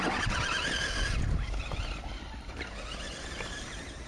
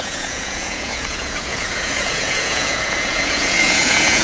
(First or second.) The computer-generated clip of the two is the second